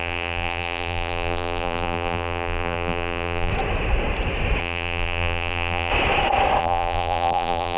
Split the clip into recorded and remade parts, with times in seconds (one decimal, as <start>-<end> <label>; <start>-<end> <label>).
0.0-3.5 remade; 3.5-4.6 recorded; 4.6-5.9 remade; 5.9-6.6 recorded; 6.6-7.8 remade